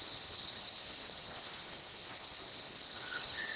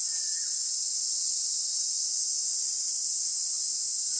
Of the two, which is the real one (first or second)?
second